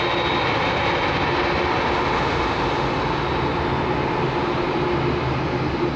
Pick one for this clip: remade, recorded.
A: recorded